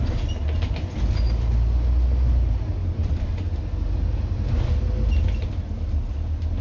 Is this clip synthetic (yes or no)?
no